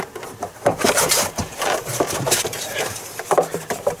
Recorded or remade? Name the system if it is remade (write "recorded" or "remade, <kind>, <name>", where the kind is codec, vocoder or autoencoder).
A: remade, vocoder, BigVGAN v2